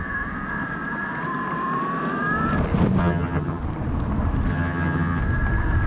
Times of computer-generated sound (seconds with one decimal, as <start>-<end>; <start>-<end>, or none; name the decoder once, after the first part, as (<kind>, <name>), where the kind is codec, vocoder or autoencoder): 3.0-3.6 (vocoder, HiFi-GAN); 4.5-5.2